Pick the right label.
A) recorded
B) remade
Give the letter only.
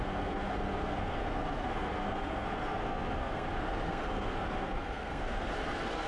B